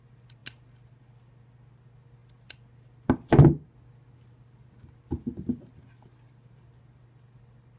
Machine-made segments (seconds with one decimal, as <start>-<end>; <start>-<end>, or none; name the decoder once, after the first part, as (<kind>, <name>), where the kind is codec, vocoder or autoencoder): none